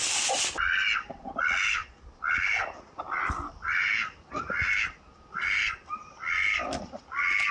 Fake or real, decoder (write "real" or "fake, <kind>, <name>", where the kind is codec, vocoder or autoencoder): real